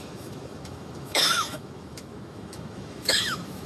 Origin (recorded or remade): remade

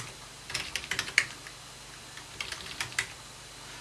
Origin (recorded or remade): recorded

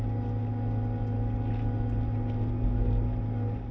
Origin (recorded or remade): recorded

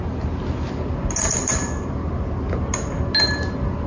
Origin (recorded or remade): recorded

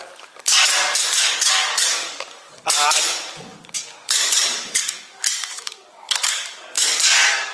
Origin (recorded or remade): remade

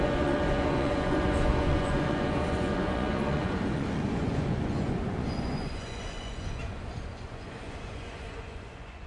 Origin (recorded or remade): remade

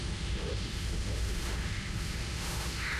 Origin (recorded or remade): remade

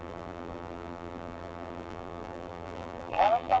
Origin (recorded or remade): remade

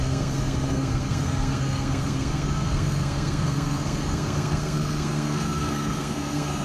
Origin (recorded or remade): remade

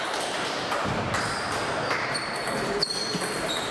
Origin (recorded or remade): remade